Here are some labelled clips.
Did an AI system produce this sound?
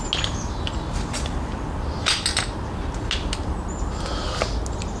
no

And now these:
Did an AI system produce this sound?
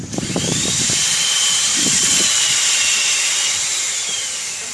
yes